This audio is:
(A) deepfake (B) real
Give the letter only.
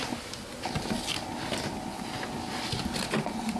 B